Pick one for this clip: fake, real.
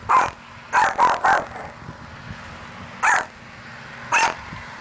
real